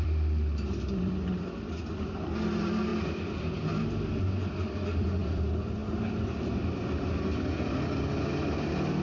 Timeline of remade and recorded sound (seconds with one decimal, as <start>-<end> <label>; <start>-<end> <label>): 0.0-9.0 remade